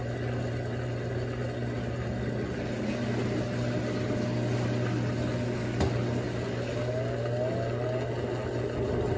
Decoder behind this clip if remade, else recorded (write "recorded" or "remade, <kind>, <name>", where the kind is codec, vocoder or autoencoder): recorded